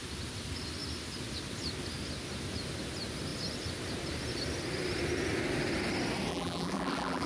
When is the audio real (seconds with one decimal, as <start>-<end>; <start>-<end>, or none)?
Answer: 0.0-6.3

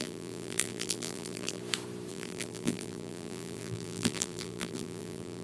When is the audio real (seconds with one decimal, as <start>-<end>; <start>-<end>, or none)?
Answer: 1.6-2.1